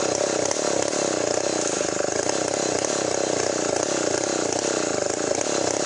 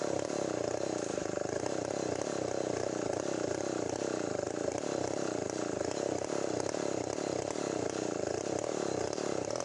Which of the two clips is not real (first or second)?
second